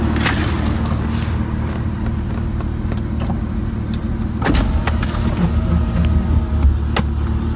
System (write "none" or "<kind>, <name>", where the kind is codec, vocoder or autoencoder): none